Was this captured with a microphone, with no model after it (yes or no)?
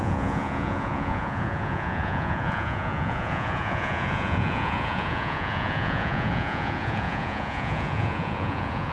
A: no